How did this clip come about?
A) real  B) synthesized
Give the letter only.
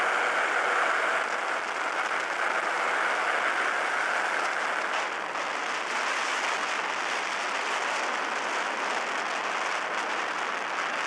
A